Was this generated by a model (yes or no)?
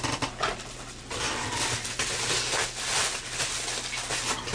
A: no